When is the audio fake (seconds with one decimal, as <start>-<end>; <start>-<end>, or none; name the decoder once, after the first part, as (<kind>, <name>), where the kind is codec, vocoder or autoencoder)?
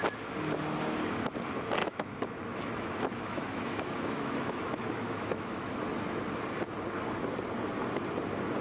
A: 1.8-5.7 (autoencoder, DAC-VAE)